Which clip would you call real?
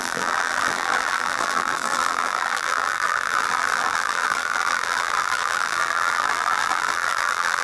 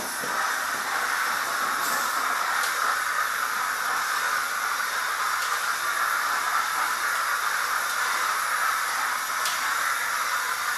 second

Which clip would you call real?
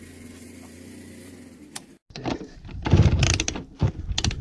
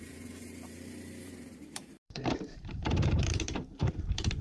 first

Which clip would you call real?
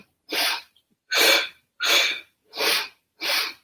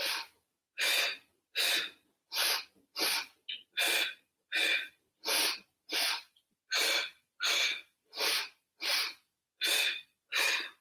second